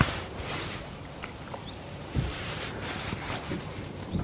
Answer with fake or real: fake